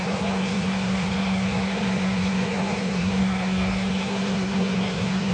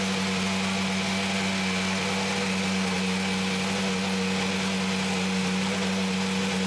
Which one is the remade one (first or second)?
first